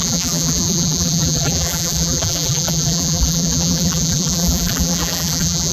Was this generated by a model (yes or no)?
yes